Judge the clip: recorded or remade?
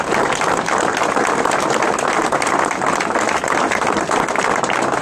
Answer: recorded